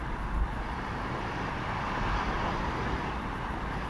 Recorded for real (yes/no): yes